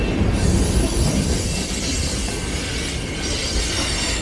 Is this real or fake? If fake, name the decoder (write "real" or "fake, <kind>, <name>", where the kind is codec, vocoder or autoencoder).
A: real